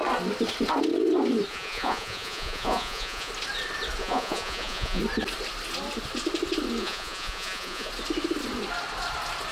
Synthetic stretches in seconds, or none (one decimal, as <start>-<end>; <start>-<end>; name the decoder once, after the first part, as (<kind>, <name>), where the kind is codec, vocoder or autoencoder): 1.5-3.3 (vocoder, Vocos); 4.0-5.0; 6.8-7.9

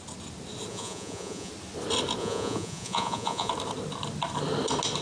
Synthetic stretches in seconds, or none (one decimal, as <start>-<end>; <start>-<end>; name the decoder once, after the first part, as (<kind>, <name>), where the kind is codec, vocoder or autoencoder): 0.7-1.5 (vocoder, Vocos); 2.2-3.5

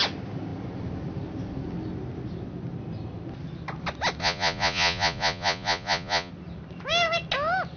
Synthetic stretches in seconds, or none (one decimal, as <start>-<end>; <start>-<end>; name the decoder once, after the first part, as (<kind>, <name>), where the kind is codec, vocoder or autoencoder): 4.2-6.3 (vocoder, Vocos)